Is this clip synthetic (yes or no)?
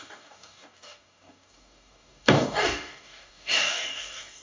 yes